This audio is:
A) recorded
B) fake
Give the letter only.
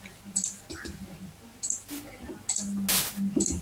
A